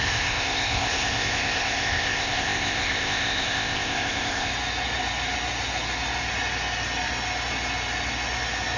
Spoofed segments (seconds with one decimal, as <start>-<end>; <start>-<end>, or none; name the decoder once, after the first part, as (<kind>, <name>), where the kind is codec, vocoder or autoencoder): 0.0-4.5 (codec, ZipCodec)